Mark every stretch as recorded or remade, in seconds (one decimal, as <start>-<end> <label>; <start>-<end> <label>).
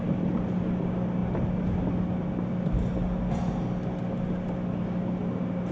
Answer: 0.0-5.7 recorded